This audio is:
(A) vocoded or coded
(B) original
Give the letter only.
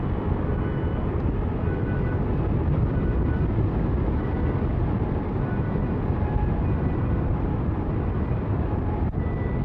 B